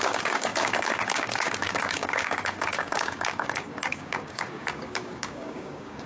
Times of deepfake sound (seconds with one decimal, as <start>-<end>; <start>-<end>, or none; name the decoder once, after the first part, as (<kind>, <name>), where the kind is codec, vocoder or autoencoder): 0.0-6.1 (codec, DAC)